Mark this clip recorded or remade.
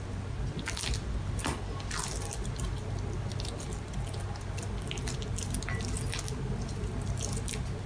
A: recorded